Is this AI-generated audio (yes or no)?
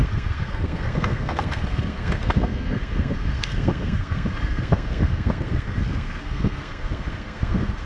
yes